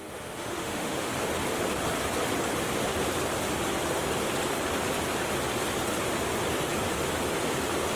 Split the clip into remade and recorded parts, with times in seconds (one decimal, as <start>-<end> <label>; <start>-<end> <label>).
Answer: 0.0-1.1 remade; 1.1-8.0 recorded